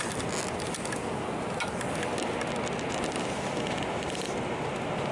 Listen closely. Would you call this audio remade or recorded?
recorded